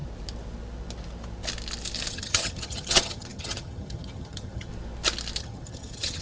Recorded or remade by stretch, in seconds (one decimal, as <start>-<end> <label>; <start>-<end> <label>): 0.0-2.1 recorded; 2.1-4.7 remade; 4.7-5.4 recorded; 5.4-6.2 remade